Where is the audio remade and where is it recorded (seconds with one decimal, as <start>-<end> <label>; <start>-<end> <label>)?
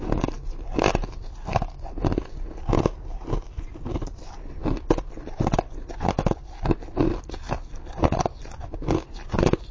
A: 0.0-9.7 recorded